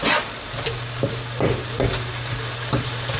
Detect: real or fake real